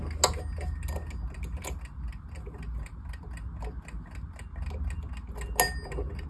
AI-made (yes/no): no